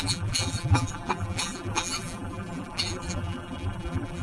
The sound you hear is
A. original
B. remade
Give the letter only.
B